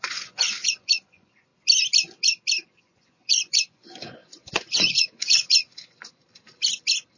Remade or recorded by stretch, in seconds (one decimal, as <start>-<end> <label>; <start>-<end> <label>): 0.0-1.5 remade; 1.5-2.8 recorded; 2.8-6.2 remade; 6.2-7.2 recorded